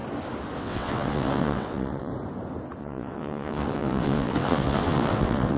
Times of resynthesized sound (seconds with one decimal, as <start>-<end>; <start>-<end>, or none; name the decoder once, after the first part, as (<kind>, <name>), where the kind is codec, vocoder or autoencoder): 0.6-2.1 (vocoder, WaveNeXt); 2.8-5.6